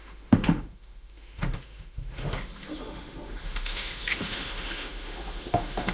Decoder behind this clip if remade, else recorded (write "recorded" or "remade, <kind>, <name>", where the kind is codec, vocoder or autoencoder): remade, autoencoder, DAC-VAE